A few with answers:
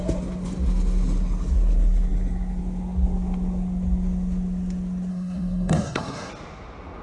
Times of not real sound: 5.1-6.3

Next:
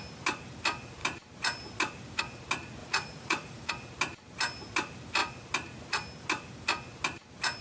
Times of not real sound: 2.8-3.7